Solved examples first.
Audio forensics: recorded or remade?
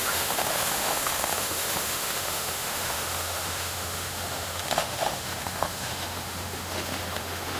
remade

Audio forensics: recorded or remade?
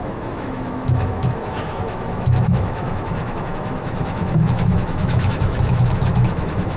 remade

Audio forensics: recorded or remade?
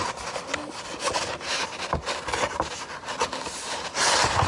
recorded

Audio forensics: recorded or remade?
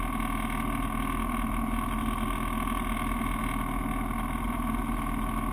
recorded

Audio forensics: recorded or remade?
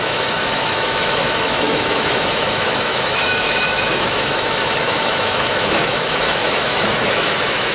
remade